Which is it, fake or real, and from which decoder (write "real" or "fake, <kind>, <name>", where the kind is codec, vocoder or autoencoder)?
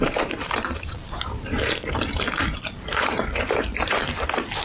fake, vocoder, BigVGAN v2